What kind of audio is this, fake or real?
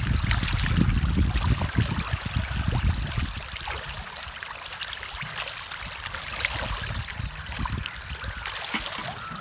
real